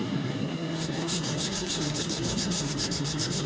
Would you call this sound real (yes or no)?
no